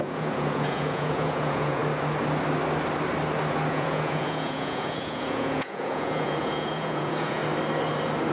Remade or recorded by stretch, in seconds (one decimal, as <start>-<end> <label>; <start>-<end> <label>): 0.0-1.8 remade; 1.8-3.7 recorded; 3.7-7.4 remade; 7.4-8.3 recorded